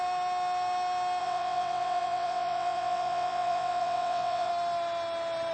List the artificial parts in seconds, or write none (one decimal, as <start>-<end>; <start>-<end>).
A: 1.2-4.5